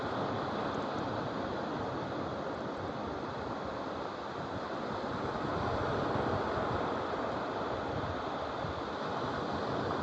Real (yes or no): yes